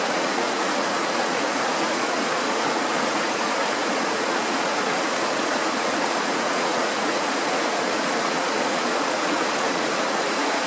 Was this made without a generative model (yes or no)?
no